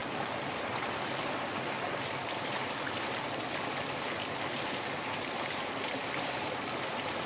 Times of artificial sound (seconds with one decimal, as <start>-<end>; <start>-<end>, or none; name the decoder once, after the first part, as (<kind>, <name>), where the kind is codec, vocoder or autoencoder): none